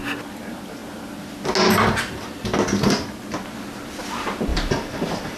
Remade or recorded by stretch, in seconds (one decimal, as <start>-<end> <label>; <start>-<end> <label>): 0.0-4.5 recorded; 4.5-5.4 remade